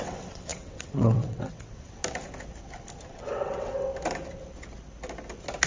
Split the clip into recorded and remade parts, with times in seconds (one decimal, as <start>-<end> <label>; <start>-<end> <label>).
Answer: 0.0-2.0 remade; 2.0-3.1 recorded; 3.1-3.9 remade; 3.9-5.7 recorded